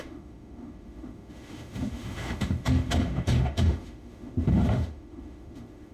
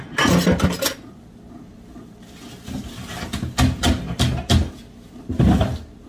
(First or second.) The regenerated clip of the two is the first